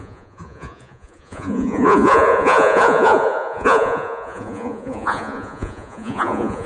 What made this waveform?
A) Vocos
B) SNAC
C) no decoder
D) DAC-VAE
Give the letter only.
A